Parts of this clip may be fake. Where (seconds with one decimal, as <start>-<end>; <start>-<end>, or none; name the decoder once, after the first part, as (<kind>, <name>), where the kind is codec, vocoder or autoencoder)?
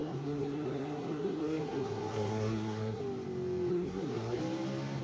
0.0-3.0 (codec, SNAC); 3.7-4.4